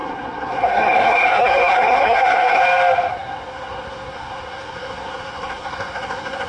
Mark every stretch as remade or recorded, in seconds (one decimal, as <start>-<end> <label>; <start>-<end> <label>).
0.0-2.6 remade; 2.6-3.1 recorded; 3.1-6.5 remade